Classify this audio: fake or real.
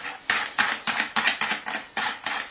real